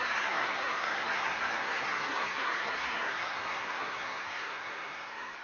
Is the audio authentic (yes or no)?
no